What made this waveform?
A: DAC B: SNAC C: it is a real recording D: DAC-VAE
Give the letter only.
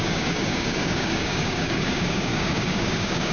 A